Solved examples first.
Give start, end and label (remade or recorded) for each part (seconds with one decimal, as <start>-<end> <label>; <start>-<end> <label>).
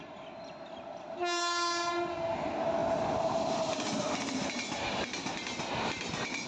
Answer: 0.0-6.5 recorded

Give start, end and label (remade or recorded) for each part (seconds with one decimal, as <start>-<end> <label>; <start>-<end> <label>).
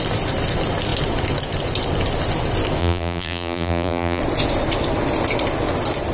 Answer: 0.0-2.8 recorded; 2.8-4.2 remade; 4.2-6.1 recorded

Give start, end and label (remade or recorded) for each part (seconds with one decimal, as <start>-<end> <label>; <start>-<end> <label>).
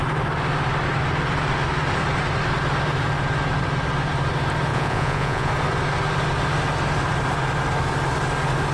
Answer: 0.0-4.7 recorded; 4.7-5.5 remade; 5.5-8.7 recorded